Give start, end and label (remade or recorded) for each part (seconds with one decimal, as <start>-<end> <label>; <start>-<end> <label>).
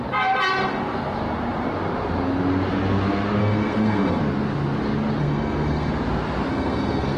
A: 0.0-3.4 recorded; 3.4-4.2 remade; 4.2-5.2 recorded; 5.2-5.9 remade; 5.9-6.5 recorded; 6.5-7.2 remade